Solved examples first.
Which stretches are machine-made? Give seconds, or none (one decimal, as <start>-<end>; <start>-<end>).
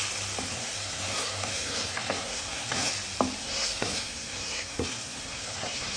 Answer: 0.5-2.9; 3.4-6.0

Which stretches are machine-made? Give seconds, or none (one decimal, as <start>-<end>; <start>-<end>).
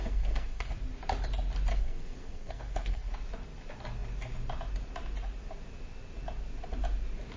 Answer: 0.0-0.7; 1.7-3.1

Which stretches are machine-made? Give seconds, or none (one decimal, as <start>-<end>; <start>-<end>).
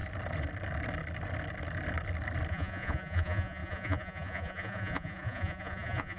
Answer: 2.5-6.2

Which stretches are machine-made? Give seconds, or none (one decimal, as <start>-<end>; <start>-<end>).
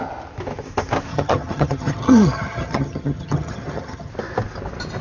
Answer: 1.1-4.1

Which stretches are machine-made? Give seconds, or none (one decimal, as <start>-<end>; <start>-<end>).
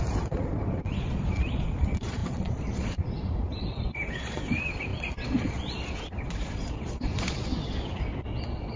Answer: 0.0-8.8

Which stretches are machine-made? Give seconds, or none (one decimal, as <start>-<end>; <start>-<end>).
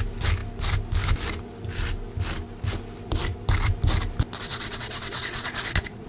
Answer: 4.5-6.1